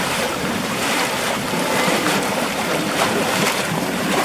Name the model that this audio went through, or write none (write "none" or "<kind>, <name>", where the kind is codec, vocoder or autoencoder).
vocoder, BigVGAN v2